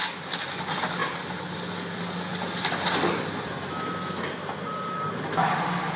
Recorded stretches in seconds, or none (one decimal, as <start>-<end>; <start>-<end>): 0.0-6.0